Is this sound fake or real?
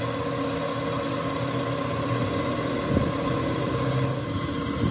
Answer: real